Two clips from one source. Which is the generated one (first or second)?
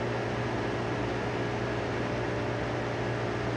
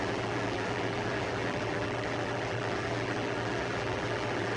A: second